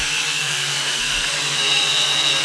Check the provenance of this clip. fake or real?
fake